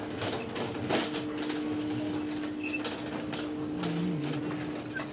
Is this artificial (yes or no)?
no